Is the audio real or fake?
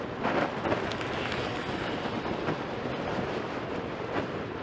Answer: real